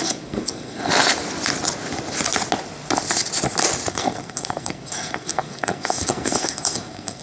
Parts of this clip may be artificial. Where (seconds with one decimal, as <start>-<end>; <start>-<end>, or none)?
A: 0.0-0.9; 3.9-7.2